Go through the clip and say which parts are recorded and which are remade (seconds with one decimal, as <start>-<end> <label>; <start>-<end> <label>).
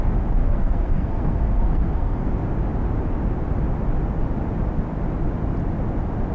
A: 0.0-0.4 recorded; 0.4-2.3 remade; 2.3-6.3 recorded